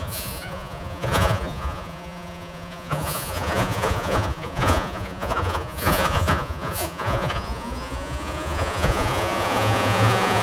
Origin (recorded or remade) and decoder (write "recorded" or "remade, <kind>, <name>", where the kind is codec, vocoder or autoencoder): remade, vocoder, Vocos